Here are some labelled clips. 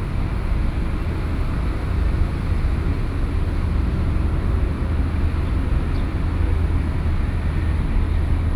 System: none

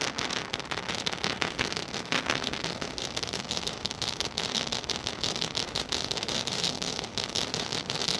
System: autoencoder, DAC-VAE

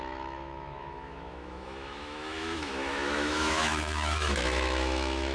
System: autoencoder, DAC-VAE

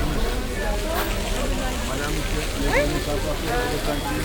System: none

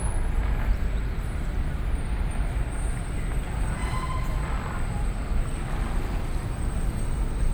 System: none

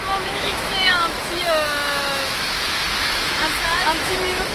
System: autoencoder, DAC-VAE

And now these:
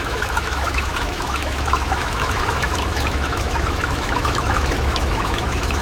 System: autoencoder, DAC-VAE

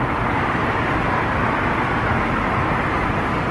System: none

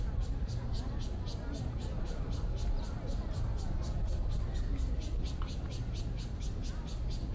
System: none